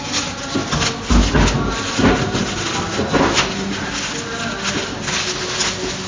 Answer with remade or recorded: recorded